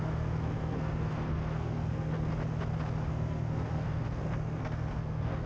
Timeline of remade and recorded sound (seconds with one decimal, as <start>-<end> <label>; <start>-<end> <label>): 0.0-2.3 remade; 2.3-3.1 recorded; 3.1-5.5 remade